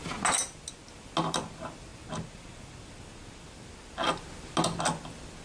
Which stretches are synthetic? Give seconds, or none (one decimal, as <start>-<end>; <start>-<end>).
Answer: none

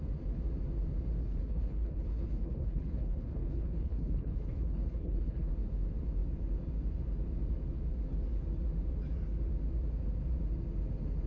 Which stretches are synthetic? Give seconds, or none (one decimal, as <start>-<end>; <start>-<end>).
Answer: 1.2-5.5

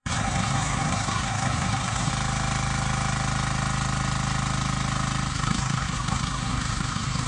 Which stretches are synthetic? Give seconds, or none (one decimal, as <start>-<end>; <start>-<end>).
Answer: 0.0-2.1; 5.3-7.3

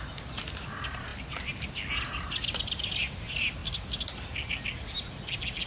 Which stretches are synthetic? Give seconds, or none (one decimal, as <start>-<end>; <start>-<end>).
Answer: none

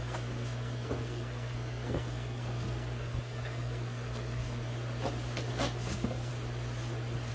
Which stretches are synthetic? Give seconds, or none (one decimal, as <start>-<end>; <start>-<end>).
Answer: 0.0-4.7; 5.5-6.3

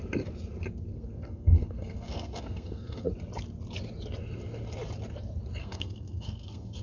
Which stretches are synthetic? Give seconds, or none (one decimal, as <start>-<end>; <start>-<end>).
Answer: 0.9-3.1; 5.6-6.8

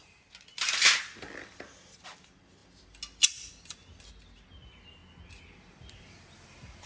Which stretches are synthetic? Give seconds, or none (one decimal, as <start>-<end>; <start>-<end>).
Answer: none